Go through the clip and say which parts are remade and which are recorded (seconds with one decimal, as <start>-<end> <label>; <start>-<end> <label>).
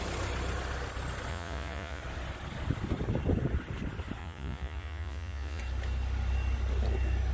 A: 0.0-1.3 recorded; 1.3-2.0 remade; 2.0-4.2 recorded; 4.2-5.6 remade; 5.6-7.3 recorded